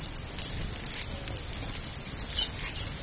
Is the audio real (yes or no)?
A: yes